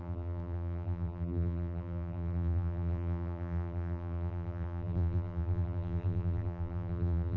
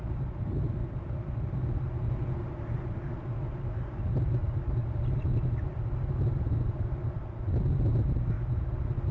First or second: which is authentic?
second